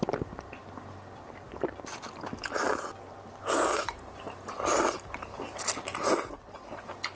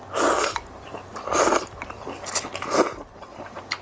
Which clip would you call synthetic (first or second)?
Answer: second